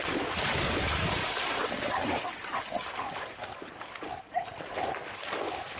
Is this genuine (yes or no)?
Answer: yes